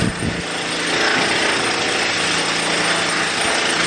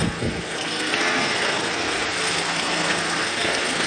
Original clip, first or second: first